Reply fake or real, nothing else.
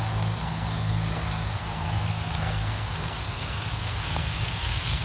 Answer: fake